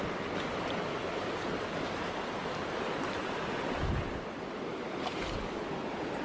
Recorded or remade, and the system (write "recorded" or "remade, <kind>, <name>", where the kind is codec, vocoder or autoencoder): remade, vocoder, BigVGAN v2